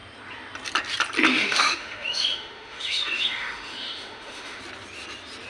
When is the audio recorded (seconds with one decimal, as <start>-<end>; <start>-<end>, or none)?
0.0-1.3; 4.6-5.5